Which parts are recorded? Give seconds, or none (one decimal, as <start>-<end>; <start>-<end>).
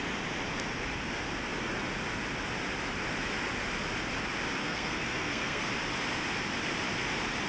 0.0-4.6; 5.7-7.5